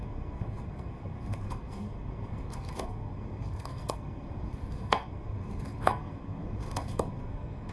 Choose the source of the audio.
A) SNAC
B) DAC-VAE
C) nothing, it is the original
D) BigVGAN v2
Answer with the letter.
A